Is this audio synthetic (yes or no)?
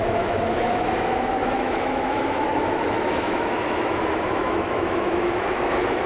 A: yes